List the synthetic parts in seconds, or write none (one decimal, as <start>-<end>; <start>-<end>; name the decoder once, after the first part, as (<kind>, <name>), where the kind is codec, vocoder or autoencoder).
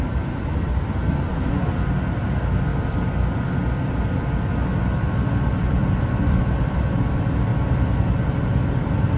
0.0-1.0 (vocoder, BigVGAN v2); 2.2-2.7; 5.6-7.5; 8.3-9.2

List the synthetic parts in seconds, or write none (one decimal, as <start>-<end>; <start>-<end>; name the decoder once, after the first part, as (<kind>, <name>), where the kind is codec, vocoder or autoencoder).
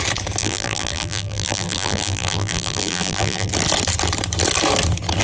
0.4-3.5 (vocoder, BigVGAN v2)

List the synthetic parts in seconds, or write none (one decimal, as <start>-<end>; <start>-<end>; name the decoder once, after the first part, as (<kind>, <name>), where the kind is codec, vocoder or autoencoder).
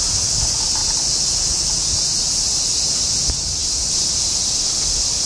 none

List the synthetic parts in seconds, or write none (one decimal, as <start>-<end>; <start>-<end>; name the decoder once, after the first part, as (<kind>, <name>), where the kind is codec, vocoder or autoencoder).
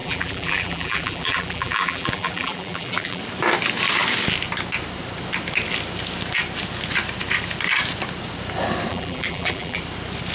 0.0-3.2 (vocoder, BigVGAN v2); 8.9-9.8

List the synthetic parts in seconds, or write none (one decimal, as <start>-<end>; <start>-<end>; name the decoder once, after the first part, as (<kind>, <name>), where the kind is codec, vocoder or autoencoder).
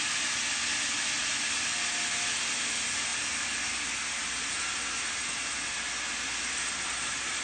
none